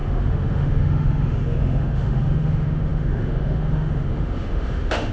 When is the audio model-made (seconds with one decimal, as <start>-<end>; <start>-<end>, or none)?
0.0-5.1